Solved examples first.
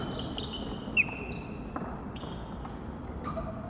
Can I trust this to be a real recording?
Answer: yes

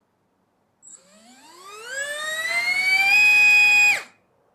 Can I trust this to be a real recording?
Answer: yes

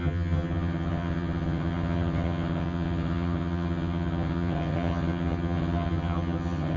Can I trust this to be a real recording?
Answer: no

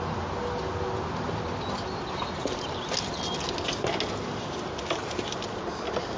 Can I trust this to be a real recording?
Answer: yes